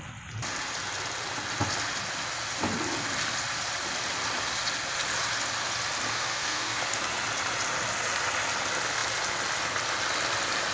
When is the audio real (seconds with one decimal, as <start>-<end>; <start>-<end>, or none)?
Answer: 0.0-6.1; 6.8-10.7